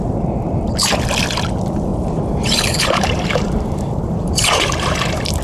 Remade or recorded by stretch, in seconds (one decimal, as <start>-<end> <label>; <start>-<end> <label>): 0.0-1.9 recorded; 1.9-5.4 remade